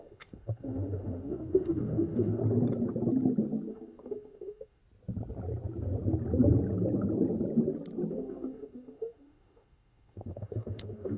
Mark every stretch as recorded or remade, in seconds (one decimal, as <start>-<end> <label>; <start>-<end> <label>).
0.0-2.4 remade; 2.4-3.7 recorded; 3.7-4.8 remade; 4.8-8.1 recorded; 8.1-11.2 remade